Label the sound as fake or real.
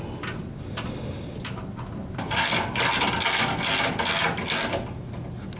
real